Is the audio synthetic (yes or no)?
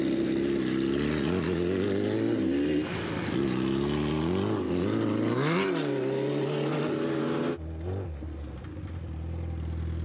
no